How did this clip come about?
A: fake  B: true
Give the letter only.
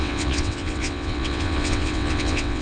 A